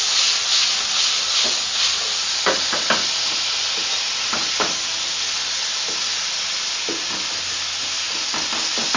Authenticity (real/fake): real